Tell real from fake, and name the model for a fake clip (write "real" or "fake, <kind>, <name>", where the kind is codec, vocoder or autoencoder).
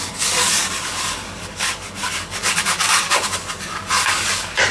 fake, codec, DAC